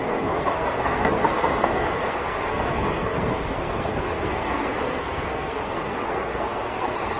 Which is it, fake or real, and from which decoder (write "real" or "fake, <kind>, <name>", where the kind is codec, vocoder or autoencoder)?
fake, codec, SNAC